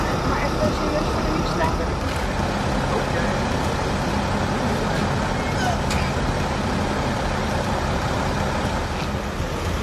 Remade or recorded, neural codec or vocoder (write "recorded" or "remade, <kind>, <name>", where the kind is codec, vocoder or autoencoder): recorded